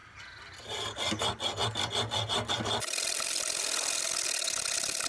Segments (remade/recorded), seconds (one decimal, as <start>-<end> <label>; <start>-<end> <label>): 0.0-5.1 recorded